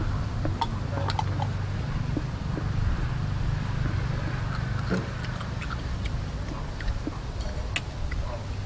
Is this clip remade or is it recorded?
recorded